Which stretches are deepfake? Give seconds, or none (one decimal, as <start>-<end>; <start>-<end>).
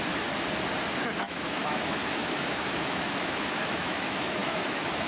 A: 1.2-5.1